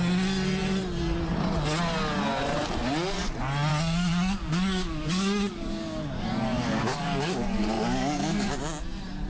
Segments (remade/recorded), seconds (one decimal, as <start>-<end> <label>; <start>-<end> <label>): 0.0-3.7 recorded; 3.7-8.6 remade; 8.6-9.3 recorded